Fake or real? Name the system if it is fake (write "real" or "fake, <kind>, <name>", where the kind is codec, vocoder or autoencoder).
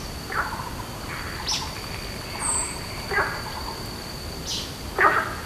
real